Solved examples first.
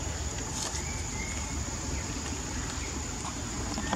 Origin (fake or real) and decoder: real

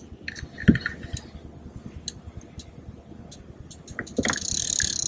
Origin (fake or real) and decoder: real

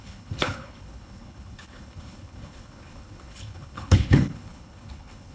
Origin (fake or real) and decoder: fake, codec, HILCodec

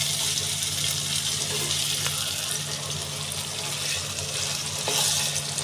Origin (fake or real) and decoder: real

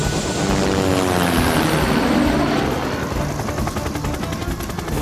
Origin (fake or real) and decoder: real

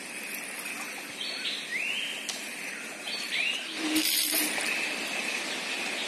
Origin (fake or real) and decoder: real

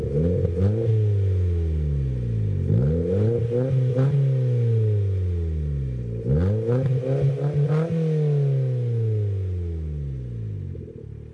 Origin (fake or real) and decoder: real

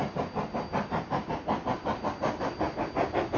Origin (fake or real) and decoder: real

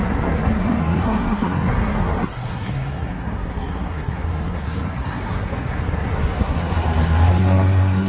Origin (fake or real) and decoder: fake, codec, SNAC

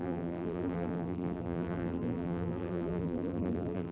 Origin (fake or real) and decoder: fake, vocoder, BigVGAN v2